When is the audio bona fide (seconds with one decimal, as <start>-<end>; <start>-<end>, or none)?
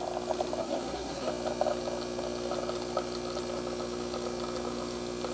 0.0-0.6; 1.3-5.3